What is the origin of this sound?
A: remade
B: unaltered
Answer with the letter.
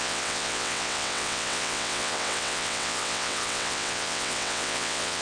A